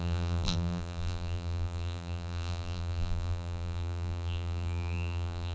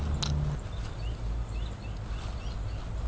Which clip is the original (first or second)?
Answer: second